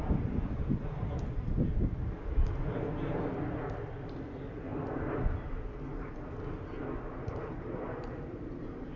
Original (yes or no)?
yes